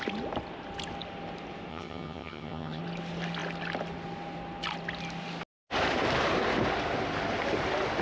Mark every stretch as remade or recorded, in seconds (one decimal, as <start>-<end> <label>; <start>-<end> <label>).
0.0-1.7 recorded; 1.7-2.8 remade; 2.8-8.0 recorded

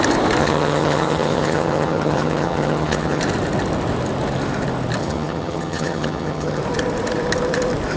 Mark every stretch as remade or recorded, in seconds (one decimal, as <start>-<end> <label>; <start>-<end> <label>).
0.0-0.4 recorded; 0.4-3.2 remade; 3.2-5.0 recorded; 5.0-6.6 remade; 6.6-8.0 recorded

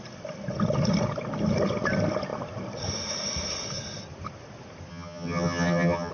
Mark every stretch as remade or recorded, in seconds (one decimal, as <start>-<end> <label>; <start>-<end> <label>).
0.0-4.9 recorded; 4.9-6.1 remade

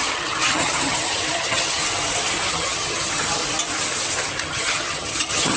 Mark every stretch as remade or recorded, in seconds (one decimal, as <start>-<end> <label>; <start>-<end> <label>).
0.0-1.8 remade; 1.8-2.5 recorded; 2.5-3.4 remade; 3.4-4.4 recorded; 4.4-5.6 remade

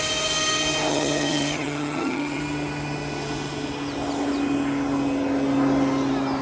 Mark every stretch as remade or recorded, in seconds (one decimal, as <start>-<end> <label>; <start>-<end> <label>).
0.0-0.9 recorded; 0.9-2.4 remade; 2.4-6.4 recorded